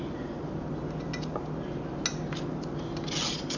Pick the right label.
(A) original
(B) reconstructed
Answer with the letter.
A